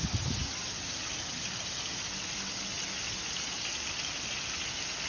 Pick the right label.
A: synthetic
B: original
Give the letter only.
B